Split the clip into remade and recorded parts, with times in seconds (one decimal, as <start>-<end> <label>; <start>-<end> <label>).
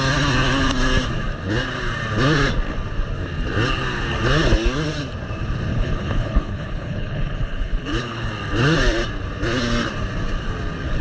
0.0-5.7 recorded; 5.7-8.3 remade; 8.3-11.0 recorded